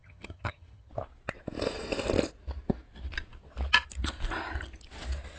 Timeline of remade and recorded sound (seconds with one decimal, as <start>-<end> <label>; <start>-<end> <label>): 0.0-0.9 remade; 0.9-5.4 recorded